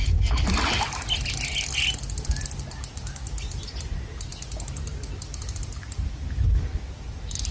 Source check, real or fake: real